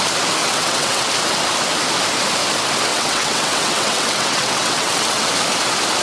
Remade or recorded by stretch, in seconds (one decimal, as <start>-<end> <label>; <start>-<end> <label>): 0.0-0.4 recorded; 0.4-1.1 remade; 1.1-2.9 recorded; 2.9-5.3 remade; 5.3-6.0 recorded